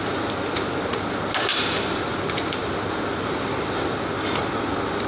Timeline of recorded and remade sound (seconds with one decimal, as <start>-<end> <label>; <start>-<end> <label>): 0.0-5.1 recorded